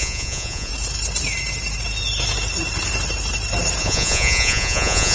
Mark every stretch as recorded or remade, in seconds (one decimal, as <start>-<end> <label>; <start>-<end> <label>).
0.0-0.7 remade; 0.7-3.8 recorded; 3.8-5.1 remade

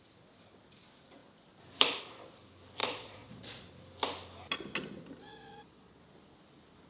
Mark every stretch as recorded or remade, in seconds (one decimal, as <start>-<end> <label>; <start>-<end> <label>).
0.0-2.8 recorded; 2.8-3.7 remade; 3.7-5.3 recorded; 5.3-6.0 remade; 6.0-6.9 recorded

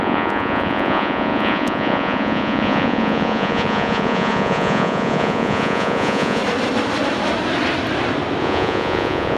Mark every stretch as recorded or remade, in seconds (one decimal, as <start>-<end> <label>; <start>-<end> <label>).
0.0-6.4 remade; 6.4-8.4 recorded; 8.4-9.4 remade